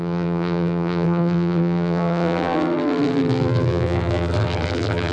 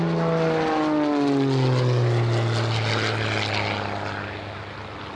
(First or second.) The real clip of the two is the second